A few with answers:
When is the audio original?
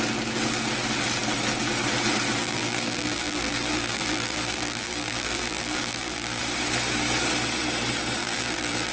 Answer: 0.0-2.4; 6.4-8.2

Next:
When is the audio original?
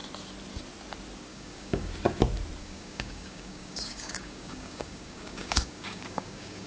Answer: 0.0-1.3; 1.9-2.6